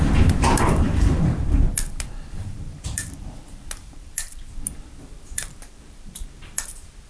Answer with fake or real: fake